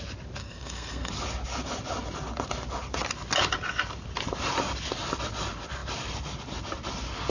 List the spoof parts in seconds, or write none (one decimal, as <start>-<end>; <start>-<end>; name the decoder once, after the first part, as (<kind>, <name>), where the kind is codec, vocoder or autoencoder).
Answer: 0.4-1.1 (codec, SNAC)